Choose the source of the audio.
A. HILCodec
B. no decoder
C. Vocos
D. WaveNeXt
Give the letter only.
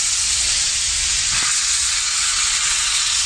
D